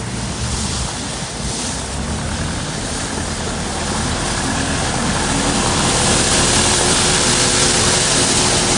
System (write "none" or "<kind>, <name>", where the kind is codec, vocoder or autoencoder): none